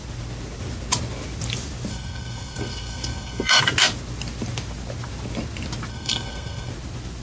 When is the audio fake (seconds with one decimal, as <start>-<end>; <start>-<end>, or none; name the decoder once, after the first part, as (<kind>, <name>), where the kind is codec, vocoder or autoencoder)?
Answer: 1.9-3.6 (codec, SNAC); 5.9-6.7